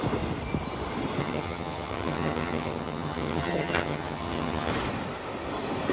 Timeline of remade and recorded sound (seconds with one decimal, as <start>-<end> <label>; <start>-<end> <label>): 0.0-1.2 recorded; 1.2-4.7 remade; 4.7-5.9 recorded